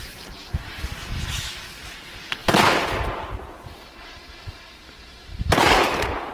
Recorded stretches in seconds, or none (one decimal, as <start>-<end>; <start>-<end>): 0.4-1.2; 2.4-6.3